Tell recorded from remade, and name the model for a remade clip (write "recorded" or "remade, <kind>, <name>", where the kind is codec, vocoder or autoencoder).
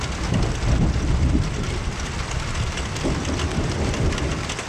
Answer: recorded